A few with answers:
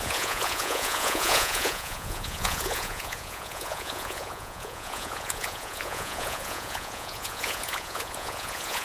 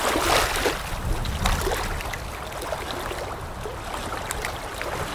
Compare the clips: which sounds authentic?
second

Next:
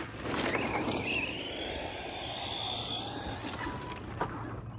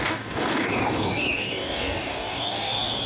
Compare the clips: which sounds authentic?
first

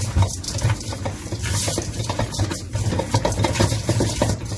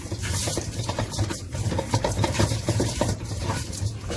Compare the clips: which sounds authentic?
first